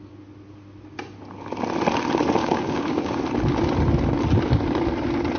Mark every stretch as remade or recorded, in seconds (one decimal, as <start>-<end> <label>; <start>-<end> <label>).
0.0-2.4 recorded; 2.4-3.2 remade; 3.2-5.4 recorded